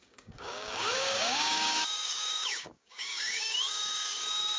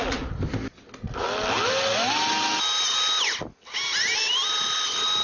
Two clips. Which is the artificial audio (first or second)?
first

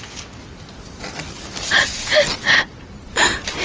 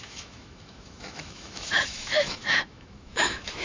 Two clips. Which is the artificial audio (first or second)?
second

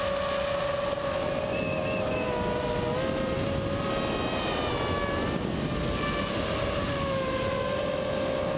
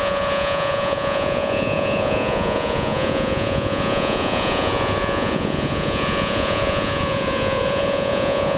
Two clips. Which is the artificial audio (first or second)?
second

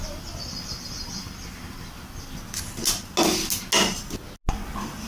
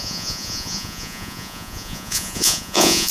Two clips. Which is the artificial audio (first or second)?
second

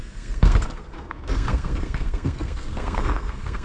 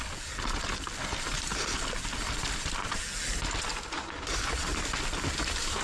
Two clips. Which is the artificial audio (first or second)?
first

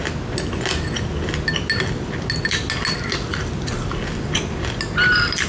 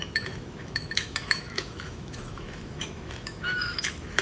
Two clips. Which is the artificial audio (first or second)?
second